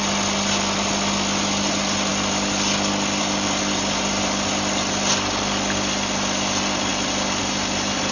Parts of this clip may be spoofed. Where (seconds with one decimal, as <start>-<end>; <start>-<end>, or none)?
none